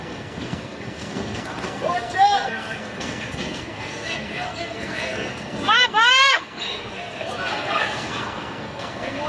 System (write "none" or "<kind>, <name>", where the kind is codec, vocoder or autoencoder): codec, SNAC